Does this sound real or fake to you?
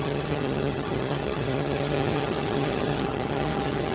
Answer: fake